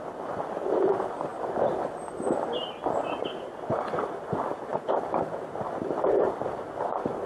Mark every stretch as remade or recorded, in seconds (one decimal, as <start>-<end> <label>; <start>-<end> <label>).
0.0-4.7 recorded; 4.7-5.5 remade; 5.5-7.3 recorded